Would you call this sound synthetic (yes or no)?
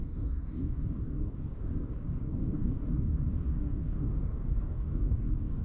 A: yes